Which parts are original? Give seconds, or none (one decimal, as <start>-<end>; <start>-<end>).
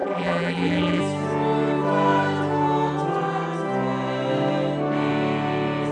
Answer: 1.0-5.9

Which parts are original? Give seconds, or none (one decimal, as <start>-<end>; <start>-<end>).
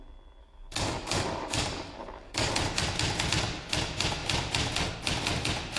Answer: 0.0-0.4; 2.5-5.8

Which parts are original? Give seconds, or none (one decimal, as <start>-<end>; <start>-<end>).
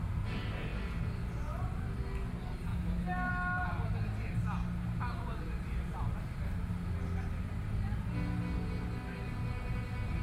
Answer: 0.0-2.7; 3.3-10.2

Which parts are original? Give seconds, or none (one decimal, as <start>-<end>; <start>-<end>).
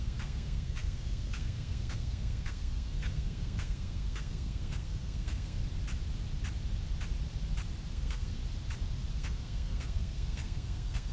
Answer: 5.6-7.9; 8.4-9.1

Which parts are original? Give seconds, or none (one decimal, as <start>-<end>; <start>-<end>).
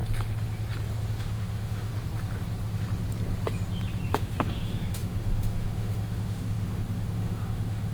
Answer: 0.0-1.1; 1.9-4.1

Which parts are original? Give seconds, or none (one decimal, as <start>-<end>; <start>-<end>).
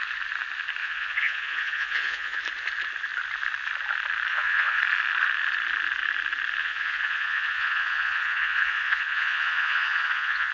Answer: 0.0-0.8; 2.4-4.3; 4.8-6.6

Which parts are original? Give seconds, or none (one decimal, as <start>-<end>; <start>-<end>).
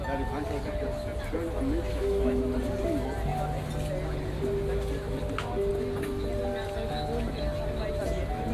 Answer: 0.0-1.9; 2.5-8.5